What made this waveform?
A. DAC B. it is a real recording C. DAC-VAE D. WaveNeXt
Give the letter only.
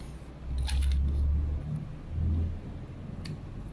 B